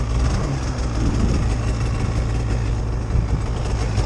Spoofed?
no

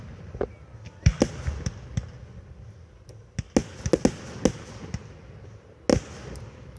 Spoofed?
no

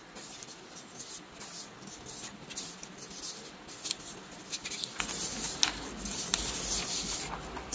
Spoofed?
no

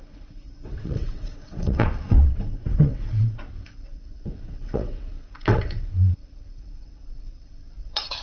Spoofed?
yes